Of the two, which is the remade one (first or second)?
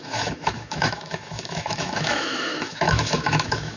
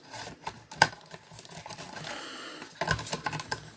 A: first